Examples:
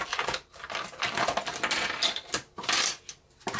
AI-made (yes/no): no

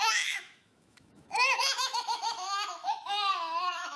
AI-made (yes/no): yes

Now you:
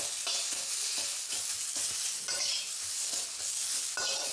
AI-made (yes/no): no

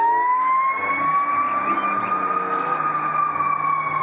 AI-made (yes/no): no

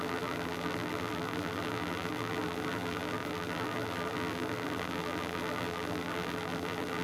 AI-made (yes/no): yes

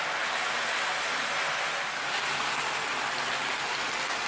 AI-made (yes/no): no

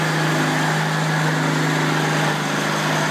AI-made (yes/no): no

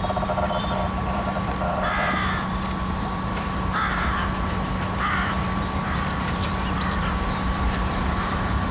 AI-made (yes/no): yes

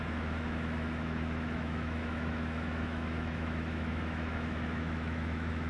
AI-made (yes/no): yes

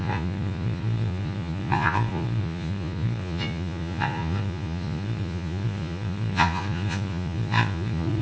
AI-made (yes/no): yes